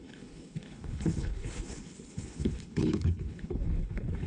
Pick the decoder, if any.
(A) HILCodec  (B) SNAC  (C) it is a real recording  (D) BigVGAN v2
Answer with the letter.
A